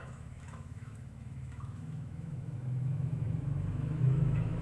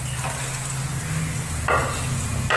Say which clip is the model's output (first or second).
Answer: first